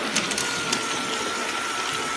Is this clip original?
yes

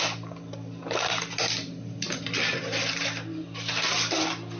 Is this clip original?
yes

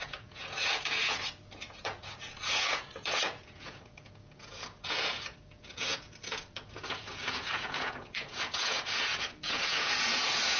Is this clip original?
no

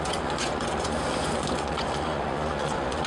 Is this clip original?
no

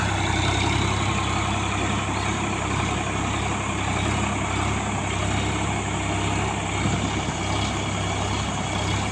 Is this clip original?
yes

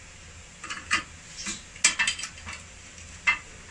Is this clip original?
yes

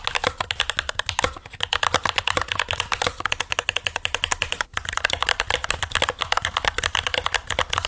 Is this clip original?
yes